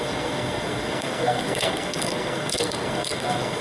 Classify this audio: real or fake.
fake